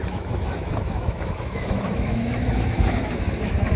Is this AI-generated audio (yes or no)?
yes